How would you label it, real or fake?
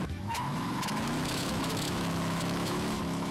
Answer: fake